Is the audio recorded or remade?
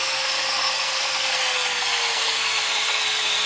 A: remade